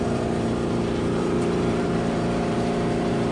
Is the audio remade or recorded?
remade